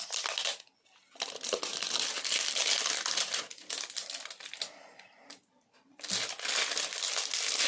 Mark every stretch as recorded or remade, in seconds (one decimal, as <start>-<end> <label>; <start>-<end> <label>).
0.0-7.7 recorded